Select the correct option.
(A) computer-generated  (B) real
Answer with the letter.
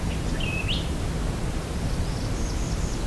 B